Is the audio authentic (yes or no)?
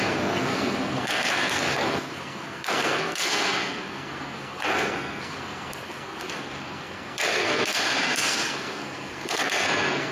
no